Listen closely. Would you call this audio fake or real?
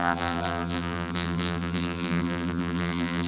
fake